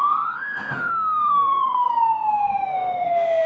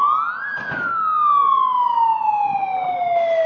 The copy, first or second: first